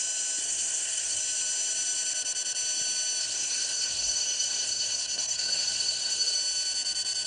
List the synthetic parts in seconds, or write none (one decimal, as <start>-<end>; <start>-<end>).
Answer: 0.4-1.2; 3.2-6.4